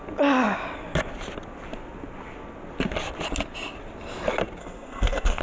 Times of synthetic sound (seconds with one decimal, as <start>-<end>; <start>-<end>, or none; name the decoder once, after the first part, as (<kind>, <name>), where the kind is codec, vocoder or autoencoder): 4.6-5.4 (codec, SNAC)